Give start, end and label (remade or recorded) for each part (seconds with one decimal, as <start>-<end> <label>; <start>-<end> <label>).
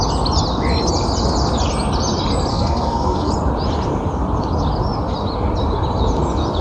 0.0-2.5 recorded; 2.5-3.3 remade; 3.3-6.6 recorded